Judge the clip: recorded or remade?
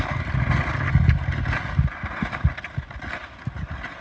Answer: recorded